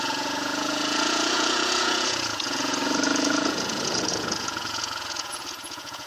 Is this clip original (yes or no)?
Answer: no